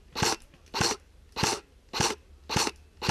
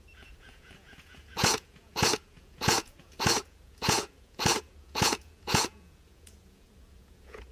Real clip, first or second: first